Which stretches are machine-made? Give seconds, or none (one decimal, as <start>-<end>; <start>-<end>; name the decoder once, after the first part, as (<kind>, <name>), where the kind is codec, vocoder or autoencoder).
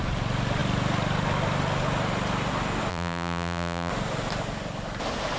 2.9-3.9 (vocoder, BigVGAN v2)